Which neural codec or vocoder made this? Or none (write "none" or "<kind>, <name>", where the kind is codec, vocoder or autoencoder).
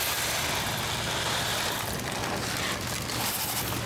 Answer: none